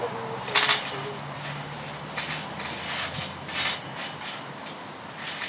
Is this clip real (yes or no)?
yes